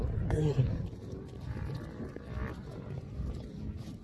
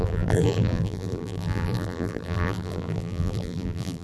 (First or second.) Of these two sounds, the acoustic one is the first